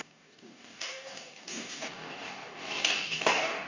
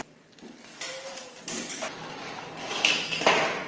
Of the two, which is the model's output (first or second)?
first